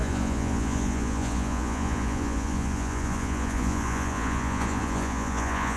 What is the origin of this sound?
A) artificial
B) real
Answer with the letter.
A